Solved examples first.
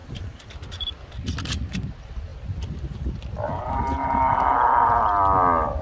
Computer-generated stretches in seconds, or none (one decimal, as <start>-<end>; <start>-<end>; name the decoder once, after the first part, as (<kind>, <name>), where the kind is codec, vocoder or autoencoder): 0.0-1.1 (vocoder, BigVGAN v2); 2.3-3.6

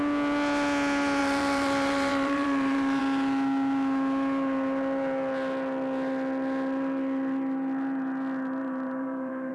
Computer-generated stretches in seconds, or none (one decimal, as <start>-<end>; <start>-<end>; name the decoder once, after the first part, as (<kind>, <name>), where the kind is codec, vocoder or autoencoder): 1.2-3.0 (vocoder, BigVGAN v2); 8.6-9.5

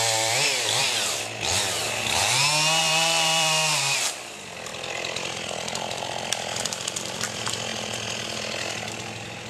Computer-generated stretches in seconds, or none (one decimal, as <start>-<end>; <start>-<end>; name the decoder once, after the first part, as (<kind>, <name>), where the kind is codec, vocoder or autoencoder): 0.0-2.2 (vocoder, BigVGAN v2); 2.8-9.5